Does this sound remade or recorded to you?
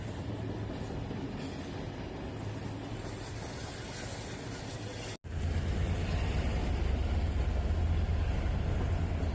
recorded